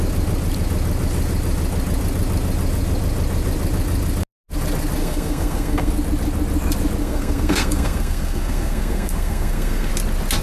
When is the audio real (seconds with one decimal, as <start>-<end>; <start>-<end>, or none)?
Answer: 0.0-5.0; 5.9-7.0; 9.9-10.4